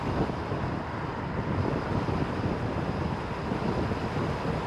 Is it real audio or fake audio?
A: real